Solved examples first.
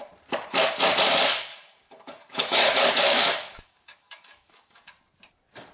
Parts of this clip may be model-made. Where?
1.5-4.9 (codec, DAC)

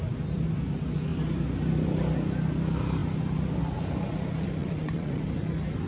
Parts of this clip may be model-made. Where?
4.6-5.2 (vocoder, WaveNeXt)

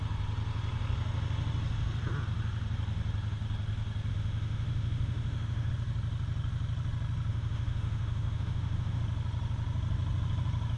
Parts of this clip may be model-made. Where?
4.1-5.7 (autoencoder, DAC-VAE); 7.3-9.0